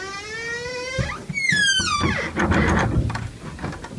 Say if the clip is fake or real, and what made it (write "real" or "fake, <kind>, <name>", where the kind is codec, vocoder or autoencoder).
real